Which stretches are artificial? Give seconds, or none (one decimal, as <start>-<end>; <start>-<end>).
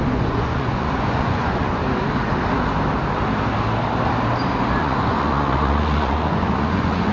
0.0-1.8; 4.8-7.1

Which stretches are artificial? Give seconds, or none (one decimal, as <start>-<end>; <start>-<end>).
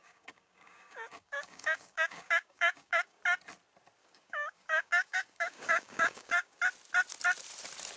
0.0-3.2; 4.0-6.6